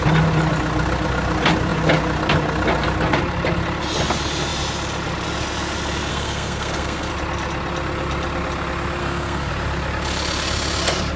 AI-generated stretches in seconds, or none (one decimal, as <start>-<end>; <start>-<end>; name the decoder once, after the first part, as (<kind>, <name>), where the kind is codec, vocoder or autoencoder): 6.1-7.1 (codec, SNAC); 9.0-9.5